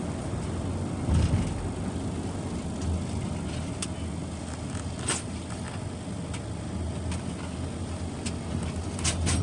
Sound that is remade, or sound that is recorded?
recorded